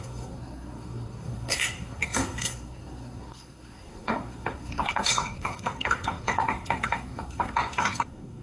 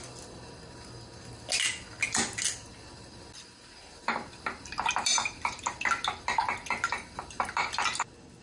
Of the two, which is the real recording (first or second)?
second